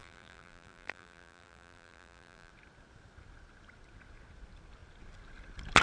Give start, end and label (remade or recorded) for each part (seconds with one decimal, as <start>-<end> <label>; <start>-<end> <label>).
0.0-2.5 remade; 2.5-5.8 recorded